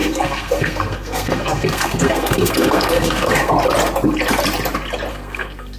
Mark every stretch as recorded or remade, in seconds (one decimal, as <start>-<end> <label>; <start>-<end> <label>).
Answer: 0.0-3.5 remade; 3.5-5.1 recorded; 5.1-5.8 remade